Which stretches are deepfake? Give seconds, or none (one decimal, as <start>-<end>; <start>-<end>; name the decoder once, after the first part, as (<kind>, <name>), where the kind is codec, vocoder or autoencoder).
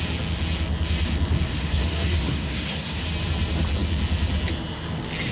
1.5-3.0 (codec, SNAC)